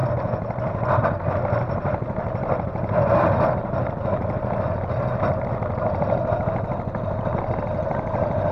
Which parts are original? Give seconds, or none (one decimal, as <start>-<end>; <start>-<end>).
0.0-8.5